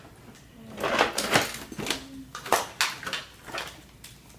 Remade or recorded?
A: recorded